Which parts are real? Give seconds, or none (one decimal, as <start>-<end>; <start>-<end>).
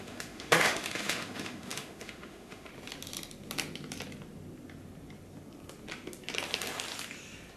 2.7-7.6